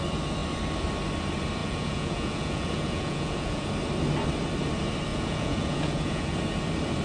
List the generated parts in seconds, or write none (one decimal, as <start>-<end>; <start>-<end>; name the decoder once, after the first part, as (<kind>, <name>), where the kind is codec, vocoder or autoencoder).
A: 1.6-3.7 (vocoder, Vocos); 5.1-6.2